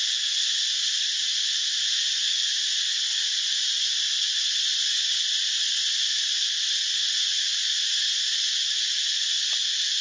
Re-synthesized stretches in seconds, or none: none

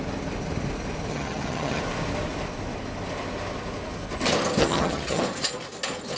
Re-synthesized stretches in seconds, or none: 1.1-1.8 (vocoder, HiFi-GAN); 4.6-5.2

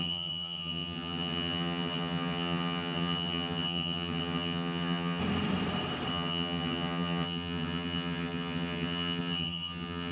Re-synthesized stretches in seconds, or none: 0.0-5.2 (vocoder, HiFi-GAN); 6.1-10.1